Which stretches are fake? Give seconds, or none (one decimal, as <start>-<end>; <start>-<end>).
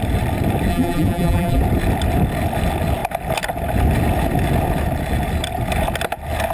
0.7-1.6